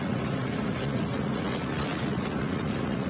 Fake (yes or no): yes